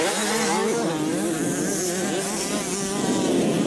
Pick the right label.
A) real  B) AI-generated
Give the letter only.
A